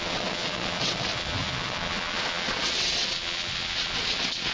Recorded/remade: remade